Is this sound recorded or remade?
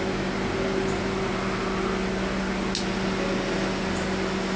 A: recorded